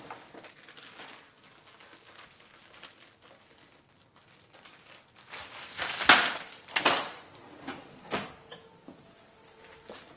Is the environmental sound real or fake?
real